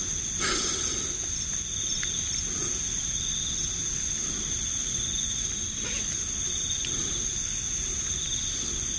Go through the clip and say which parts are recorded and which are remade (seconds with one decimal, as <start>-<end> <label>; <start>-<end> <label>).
0.0-9.0 recorded